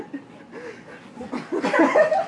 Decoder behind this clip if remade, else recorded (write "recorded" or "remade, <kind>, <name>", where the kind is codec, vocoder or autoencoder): recorded